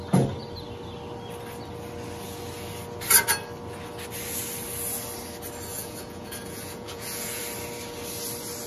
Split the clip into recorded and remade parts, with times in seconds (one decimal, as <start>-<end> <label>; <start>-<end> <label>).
0.0-5.7 recorded; 5.7-7.4 remade; 7.4-8.7 recorded